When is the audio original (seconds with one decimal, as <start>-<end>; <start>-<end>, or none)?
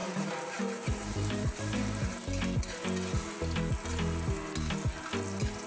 2.1-5.7